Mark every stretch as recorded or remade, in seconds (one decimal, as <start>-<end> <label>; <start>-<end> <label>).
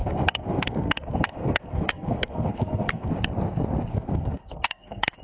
0.0-3.1 remade; 3.1-3.9 recorded; 3.9-5.2 remade